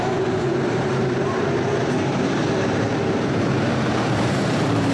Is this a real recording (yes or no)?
no